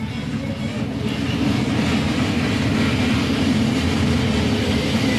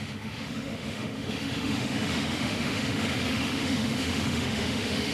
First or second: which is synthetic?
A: second